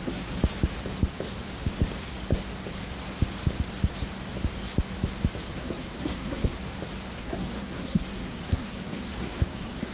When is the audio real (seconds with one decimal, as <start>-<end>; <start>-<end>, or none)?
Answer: 0.4-5.5; 6.6-7.2